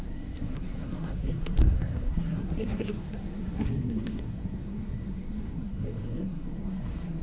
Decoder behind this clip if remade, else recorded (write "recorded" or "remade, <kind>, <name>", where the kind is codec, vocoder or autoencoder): remade, codec, SNAC